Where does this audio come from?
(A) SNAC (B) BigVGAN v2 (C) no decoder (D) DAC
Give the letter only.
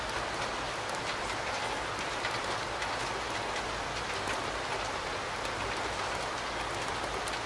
C